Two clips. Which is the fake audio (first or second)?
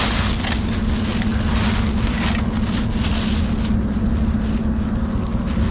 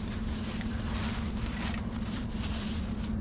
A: second